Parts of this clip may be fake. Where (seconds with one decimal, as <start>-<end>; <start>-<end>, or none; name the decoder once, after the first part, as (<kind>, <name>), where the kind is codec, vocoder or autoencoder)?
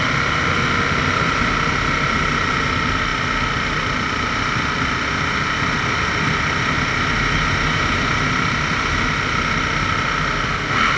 none